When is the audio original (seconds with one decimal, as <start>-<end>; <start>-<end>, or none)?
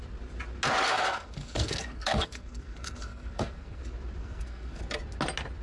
0.0-0.9; 3.8-4.2; 4.8-5.6